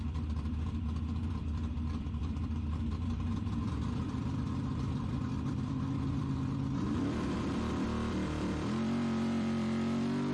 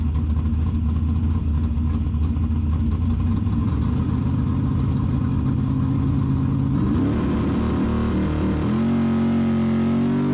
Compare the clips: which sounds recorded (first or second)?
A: second